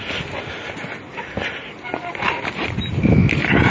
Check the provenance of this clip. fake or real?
real